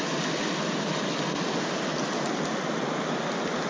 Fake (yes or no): no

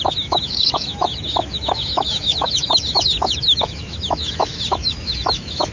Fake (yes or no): yes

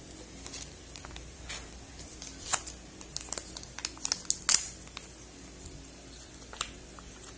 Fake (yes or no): no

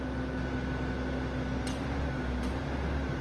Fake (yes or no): no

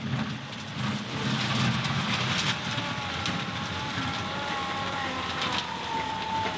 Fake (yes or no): no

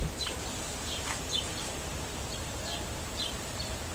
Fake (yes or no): yes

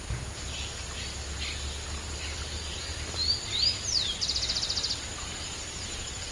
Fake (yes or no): no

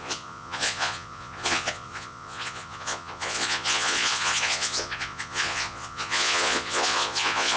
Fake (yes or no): yes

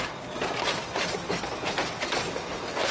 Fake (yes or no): no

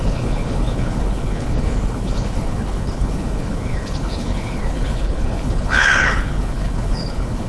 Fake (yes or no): yes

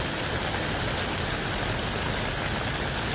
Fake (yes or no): no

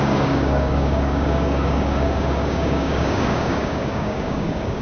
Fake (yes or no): yes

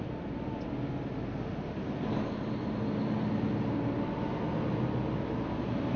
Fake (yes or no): no